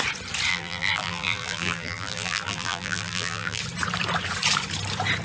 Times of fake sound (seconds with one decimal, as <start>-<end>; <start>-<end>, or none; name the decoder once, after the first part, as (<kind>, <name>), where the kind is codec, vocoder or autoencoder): 0.5-3.6 (vocoder, BigVGAN v2)